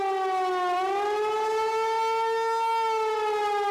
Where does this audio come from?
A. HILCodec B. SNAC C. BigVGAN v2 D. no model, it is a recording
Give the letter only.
D